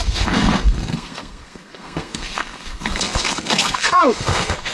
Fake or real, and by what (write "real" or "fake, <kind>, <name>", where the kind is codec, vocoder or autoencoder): fake, codec, SNAC